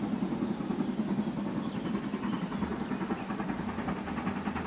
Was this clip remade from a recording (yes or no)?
no